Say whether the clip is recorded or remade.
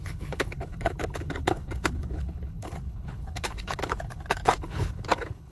remade